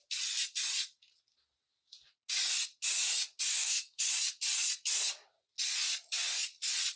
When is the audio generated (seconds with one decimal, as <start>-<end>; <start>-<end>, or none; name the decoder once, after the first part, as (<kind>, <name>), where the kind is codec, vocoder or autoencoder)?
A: 3.5-4.1 (codec, SNAC)